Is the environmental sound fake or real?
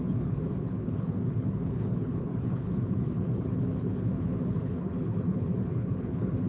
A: fake